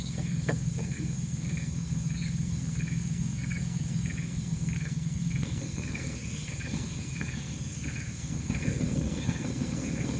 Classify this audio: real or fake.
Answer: fake